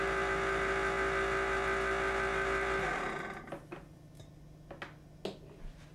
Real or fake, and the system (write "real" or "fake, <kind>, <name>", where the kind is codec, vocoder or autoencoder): real